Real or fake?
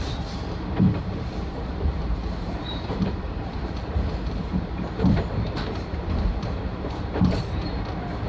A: fake